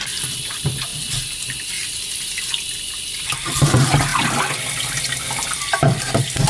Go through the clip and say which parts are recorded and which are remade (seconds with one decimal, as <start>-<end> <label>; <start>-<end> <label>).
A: 0.0-6.5 recorded